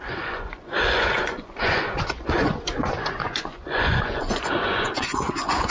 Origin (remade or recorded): remade